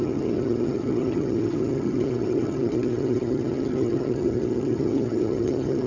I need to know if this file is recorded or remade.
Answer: remade